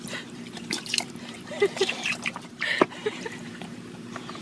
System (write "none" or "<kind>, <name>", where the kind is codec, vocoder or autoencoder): vocoder, BigVGAN v2